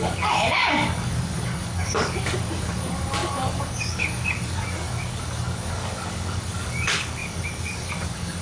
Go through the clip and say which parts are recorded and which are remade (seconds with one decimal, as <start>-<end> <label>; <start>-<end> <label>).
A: 0.0-8.4 remade